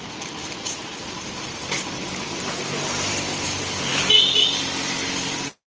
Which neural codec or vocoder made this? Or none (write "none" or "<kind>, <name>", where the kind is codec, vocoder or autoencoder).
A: none